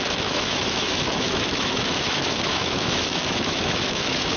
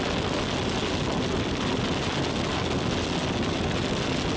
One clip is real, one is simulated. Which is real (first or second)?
second